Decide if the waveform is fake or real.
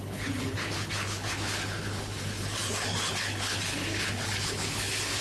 fake